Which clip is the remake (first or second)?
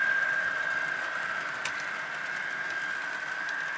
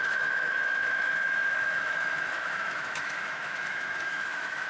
second